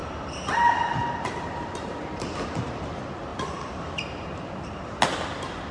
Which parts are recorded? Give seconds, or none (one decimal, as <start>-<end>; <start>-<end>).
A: 1.0-3.3; 4.3-5.7